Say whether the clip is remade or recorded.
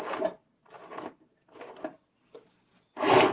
recorded